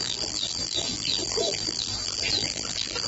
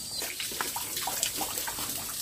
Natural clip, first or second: second